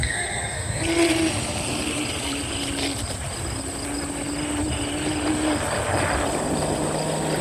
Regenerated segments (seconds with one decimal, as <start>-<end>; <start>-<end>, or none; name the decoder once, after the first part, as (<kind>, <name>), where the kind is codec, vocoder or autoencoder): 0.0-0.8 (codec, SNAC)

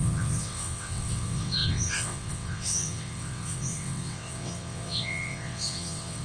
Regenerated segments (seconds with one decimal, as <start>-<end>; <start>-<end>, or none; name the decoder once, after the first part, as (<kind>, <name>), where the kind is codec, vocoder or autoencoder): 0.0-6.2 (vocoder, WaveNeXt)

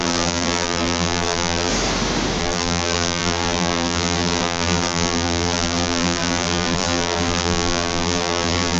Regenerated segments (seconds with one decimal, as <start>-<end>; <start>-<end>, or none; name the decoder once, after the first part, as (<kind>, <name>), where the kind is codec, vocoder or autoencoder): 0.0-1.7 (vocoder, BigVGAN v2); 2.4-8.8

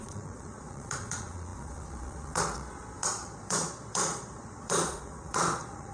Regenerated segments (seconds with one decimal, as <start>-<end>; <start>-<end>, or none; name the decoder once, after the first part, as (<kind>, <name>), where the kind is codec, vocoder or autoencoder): 0.0-5.9 (vocoder, Vocos)

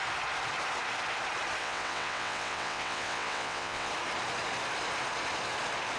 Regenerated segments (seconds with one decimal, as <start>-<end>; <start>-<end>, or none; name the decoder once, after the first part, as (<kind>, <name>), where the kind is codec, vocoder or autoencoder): 1.6-3.9 (vocoder, WaveNeXt)

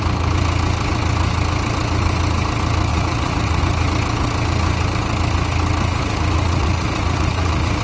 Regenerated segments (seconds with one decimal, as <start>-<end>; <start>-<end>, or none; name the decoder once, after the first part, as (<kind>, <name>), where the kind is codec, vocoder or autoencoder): 2.9-3.6 (vocoder, Vocos); 5.9-7.8

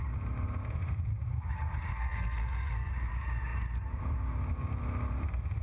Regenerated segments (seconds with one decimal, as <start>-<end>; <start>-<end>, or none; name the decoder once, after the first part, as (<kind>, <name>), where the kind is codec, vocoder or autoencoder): 1.9-2.9 (codec, SNAC)